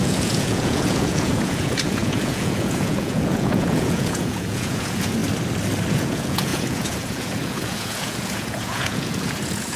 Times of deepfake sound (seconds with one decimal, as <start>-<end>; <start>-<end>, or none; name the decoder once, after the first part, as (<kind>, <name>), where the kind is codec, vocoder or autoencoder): 0.0-5.2 (vocoder, Vocos); 5.9-9.8